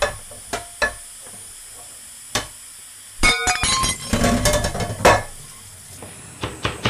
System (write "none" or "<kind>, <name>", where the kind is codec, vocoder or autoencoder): none